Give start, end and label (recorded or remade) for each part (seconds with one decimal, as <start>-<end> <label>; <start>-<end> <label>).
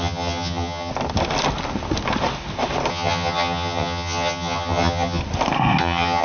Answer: 0.0-0.9 remade; 0.9-2.9 recorded; 2.9-5.2 remade; 5.2-5.8 recorded; 5.8-6.2 remade